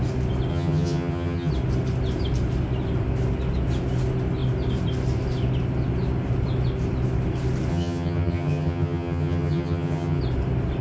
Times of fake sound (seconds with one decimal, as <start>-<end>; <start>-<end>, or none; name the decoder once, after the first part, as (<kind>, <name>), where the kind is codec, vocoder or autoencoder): 0.5-1.5 (vocoder, HiFi-GAN); 7.7-10.2